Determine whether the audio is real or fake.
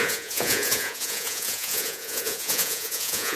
fake